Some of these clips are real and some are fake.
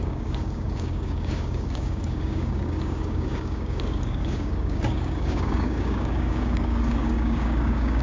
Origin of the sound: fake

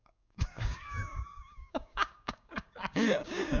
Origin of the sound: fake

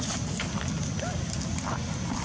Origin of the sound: real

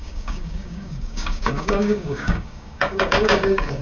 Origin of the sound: fake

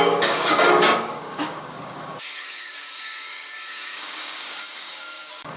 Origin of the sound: fake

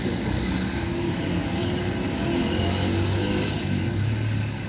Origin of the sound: fake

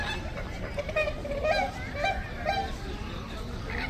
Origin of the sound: real